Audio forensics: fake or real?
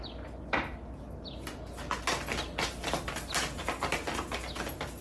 real